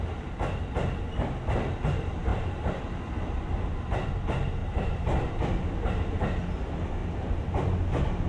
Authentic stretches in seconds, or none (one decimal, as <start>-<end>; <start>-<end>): 0.0-2.3; 2.9-4.6; 5.3-7.0; 7.5-8.3